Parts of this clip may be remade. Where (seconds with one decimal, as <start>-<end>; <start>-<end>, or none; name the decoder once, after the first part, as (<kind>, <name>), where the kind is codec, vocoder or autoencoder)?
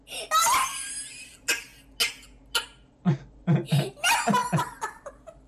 0.4-0.9 (vocoder, BigVGAN v2); 4.4-5.1